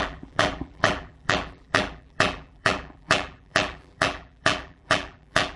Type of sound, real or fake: fake